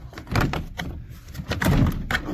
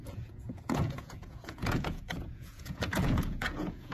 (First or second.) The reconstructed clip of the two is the second